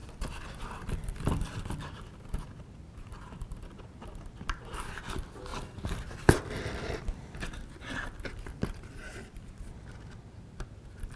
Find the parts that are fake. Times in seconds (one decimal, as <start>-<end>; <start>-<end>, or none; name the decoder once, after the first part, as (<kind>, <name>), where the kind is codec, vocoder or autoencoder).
0.0-3.7 (vocoder, BigVGAN v2); 5.5-7.3